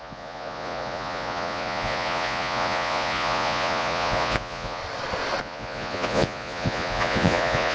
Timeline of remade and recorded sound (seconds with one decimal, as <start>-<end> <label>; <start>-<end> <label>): 0.0-4.8 remade; 4.8-5.4 recorded; 5.4-7.7 remade